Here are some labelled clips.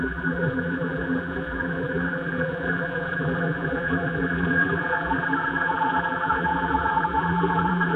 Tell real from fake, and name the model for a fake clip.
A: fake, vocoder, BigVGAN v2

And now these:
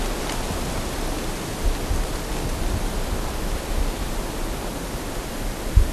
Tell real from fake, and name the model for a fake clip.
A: real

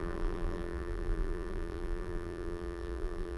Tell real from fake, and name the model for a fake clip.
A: fake, vocoder, BigVGAN v2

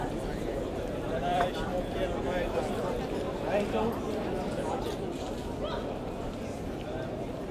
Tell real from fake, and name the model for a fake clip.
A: fake, vocoder, BigVGAN v2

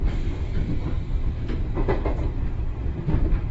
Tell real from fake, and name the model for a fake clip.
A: fake, vocoder, BigVGAN v2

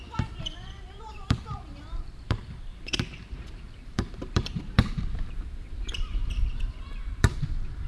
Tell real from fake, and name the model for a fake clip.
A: fake, vocoder, BigVGAN v2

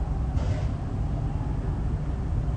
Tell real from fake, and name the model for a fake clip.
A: fake, vocoder, BigVGAN v2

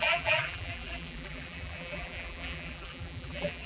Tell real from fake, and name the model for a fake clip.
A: fake, vocoder, BigVGAN v2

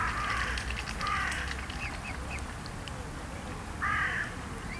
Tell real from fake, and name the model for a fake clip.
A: real